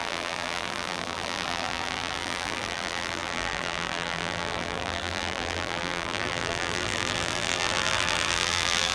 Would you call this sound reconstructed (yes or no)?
yes